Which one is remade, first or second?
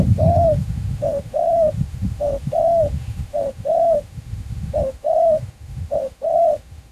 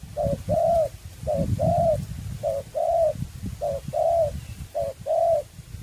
first